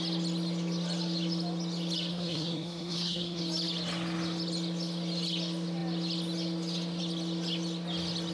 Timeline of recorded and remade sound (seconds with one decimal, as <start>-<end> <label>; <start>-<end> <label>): 0.0-2.1 recorded; 2.1-3.4 remade; 3.4-8.3 recorded